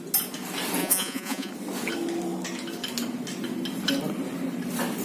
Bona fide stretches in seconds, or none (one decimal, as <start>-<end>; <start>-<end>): 0.0-0.8; 1.5-5.0